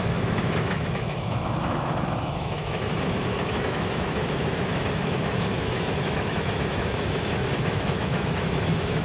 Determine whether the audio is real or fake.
fake